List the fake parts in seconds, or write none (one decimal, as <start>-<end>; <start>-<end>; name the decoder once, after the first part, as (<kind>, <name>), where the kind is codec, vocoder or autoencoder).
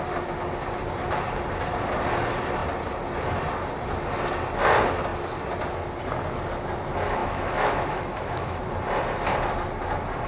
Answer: 7.2-8.6 (autoencoder, DAC-VAE)